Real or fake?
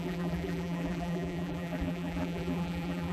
fake